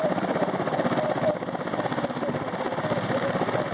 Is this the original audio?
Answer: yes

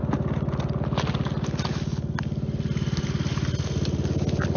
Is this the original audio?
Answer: yes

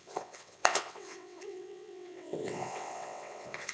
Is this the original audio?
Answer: no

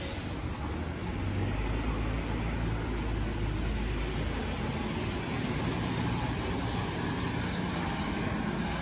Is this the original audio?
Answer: yes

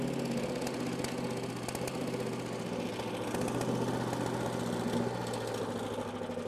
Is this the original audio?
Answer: yes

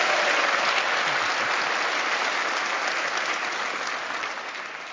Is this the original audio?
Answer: yes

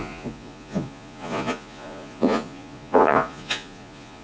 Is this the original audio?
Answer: no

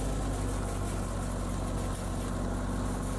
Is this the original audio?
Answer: yes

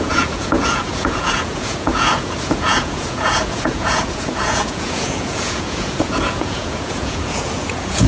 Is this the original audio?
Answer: no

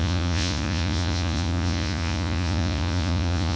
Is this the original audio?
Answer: no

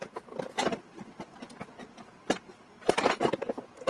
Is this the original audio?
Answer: yes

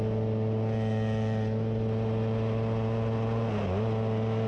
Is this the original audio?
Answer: yes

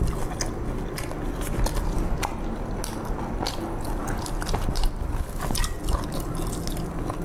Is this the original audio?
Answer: yes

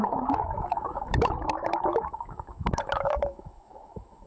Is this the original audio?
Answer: no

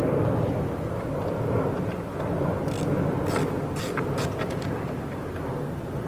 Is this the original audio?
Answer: yes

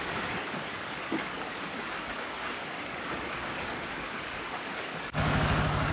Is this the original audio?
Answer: no